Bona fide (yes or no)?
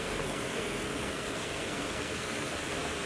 no